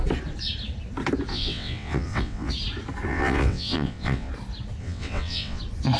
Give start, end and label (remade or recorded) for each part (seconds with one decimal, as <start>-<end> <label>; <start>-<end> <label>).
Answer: 0.0-1.3 recorded; 1.3-2.5 remade; 2.5-3.1 recorded; 3.1-4.3 remade; 4.3-4.8 recorded; 4.8-5.6 remade; 5.6-6.0 recorded